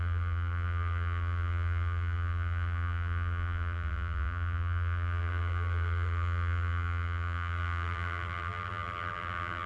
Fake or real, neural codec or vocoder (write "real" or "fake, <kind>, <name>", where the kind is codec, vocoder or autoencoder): fake, vocoder, BigVGAN v2